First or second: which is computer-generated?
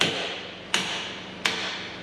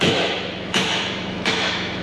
second